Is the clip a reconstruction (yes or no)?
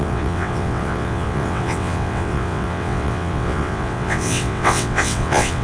yes